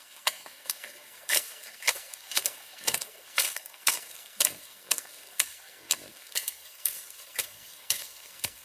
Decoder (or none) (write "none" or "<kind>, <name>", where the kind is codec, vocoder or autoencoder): codec, SNAC